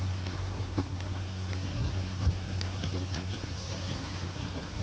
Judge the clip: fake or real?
fake